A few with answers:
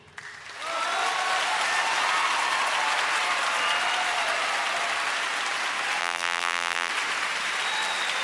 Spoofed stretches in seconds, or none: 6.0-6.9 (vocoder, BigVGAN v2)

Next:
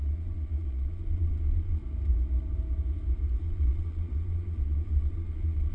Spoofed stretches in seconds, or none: 0.0-1.8 (vocoder, Vocos); 3.4-5.7

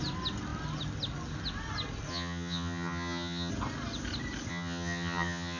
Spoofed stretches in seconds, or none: 2.1-3.5 (vocoder, HiFi-GAN); 4.5-5.6

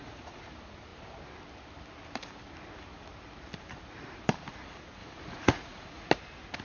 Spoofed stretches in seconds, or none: 0.0-0.5 (vocoder, Vocos); 5.0-6.1

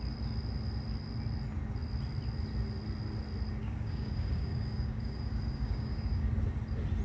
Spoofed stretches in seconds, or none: 3.6-6.3 (codec, DAC)